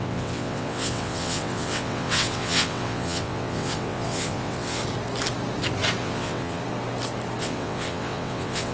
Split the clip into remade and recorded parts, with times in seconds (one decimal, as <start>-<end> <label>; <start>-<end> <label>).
0.0-4.8 remade; 4.8-6.0 recorded; 6.0-6.6 remade; 6.6-7.4 recorded; 7.4-8.7 remade